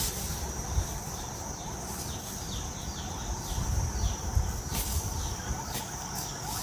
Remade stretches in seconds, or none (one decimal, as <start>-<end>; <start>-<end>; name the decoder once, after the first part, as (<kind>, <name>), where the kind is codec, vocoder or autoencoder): 4.9-6.6 (codec, DAC)